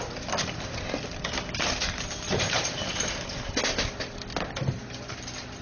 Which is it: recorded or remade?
recorded